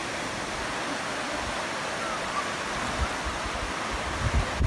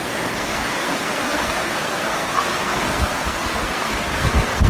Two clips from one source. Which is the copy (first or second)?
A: second